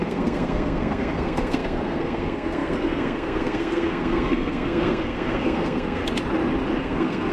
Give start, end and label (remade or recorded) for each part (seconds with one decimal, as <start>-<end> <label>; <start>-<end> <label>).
0.0-6.0 remade; 6.0-6.8 recorded; 6.8-7.3 remade